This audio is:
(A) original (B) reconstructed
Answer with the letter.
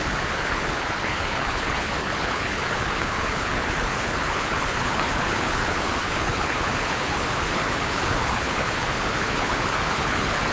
B